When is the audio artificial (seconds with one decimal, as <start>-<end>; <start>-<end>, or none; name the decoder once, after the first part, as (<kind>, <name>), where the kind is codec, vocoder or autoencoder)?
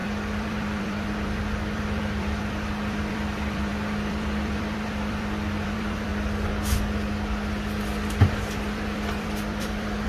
0.0-6.1 (vocoder, BigVGAN v2); 7.8-10.1